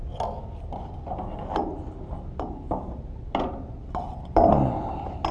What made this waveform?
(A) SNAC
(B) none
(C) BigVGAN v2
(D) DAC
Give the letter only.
B